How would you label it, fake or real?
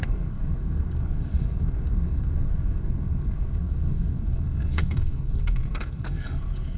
fake